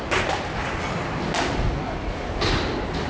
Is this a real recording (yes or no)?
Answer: yes